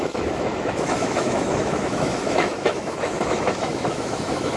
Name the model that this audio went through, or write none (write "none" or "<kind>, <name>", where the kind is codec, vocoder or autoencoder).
autoencoder, DAC-VAE